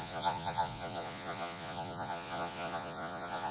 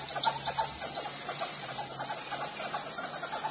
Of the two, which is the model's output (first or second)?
first